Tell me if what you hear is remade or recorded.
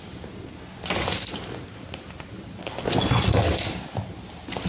recorded